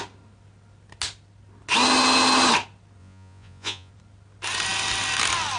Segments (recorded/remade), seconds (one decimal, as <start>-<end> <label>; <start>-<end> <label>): 0.0-3.0 recorded; 3.0-3.9 remade; 3.9-5.6 recorded